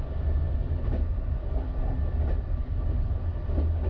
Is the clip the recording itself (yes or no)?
yes